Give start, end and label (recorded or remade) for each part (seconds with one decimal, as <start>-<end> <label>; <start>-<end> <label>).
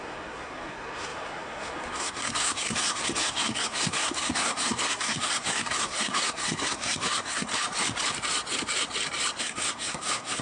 0.0-7.5 remade; 7.5-9.4 recorded; 9.4-10.4 remade